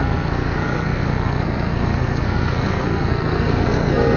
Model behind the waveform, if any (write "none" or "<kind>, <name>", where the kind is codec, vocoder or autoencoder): codec, SNAC